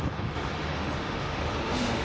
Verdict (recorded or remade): remade